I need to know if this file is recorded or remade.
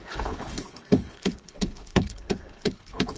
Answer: remade